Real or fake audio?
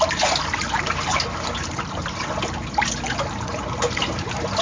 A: real